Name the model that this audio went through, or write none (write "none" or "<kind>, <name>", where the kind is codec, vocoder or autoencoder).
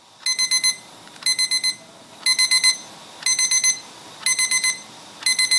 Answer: none